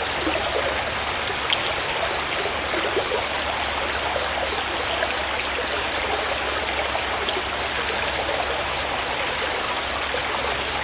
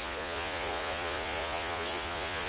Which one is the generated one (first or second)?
second